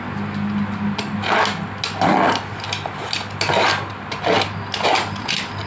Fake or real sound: real